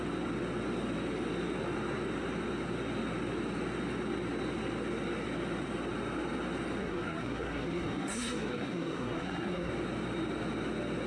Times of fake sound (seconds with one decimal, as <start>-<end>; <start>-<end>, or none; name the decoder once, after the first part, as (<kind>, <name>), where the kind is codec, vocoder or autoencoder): 6.8-9.7 (codec, SNAC)